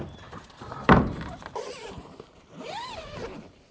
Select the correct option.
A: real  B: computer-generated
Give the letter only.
B